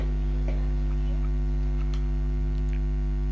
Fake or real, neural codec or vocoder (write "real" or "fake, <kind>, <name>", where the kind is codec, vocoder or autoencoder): real